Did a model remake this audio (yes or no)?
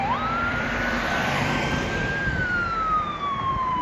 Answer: yes